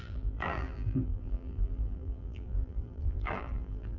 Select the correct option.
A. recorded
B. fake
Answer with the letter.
B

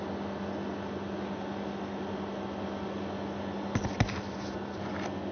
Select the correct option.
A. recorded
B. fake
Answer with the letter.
A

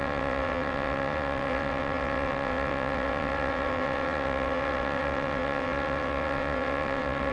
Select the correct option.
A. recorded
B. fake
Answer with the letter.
B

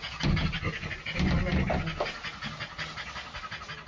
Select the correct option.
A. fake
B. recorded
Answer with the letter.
B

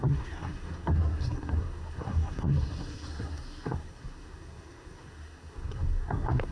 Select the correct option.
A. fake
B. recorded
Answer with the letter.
A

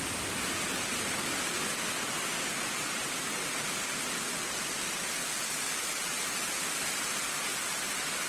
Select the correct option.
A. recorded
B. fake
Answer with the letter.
A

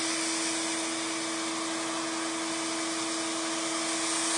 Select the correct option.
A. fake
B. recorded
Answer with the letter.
B